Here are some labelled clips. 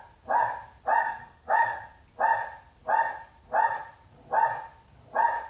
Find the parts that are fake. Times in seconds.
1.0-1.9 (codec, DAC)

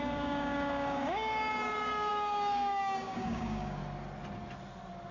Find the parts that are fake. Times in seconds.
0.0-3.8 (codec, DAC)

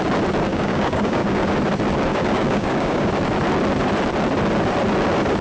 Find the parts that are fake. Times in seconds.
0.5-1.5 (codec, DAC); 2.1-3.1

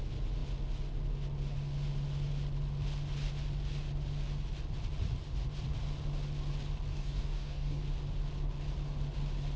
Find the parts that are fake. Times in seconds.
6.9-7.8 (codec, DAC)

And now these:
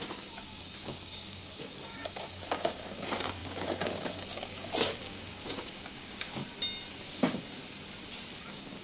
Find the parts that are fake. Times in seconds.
0.0-6.4 (codec, DAC); 7.0-7.6; 8.4-8.8

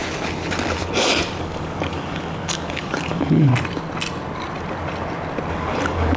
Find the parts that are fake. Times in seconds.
1.4-3.5 (codec, DAC); 5.5-6.2